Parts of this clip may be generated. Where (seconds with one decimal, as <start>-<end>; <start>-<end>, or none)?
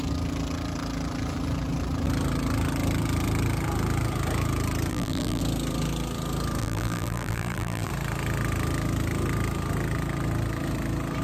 4.9-5.4; 6.6-7.9